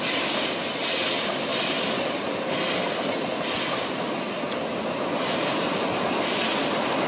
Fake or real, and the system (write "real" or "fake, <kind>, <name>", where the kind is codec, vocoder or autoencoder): real